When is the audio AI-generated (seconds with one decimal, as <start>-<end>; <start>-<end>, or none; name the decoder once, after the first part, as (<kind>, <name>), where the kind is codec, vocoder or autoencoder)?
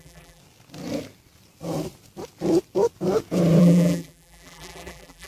0.0-0.4 (vocoder, BigVGAN v2); 3.6-5.3